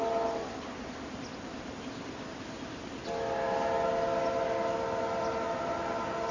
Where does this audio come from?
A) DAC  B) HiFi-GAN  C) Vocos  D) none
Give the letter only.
D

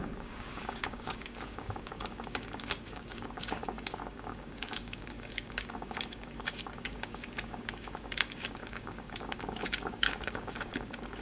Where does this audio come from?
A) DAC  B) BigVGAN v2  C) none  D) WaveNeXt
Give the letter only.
A